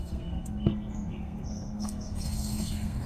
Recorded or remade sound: remade